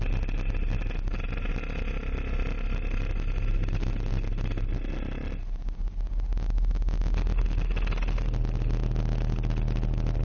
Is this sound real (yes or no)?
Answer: yes